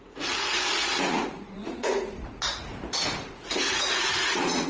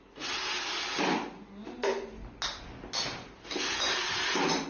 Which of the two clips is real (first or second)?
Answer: second